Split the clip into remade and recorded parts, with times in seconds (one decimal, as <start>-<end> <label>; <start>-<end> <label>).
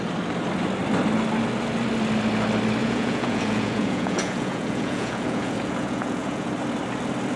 0.0-2.8 recorded; 2.8-6.5 remade; 6.5-7.4 recorded